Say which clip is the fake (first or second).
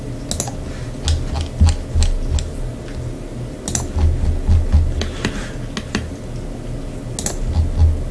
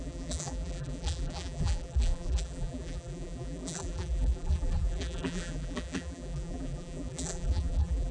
second